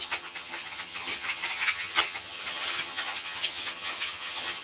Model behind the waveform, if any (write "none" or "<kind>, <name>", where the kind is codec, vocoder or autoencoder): vocoder, HiFi-GAN